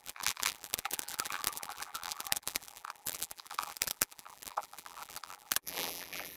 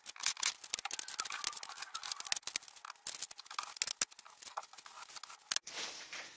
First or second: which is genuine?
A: second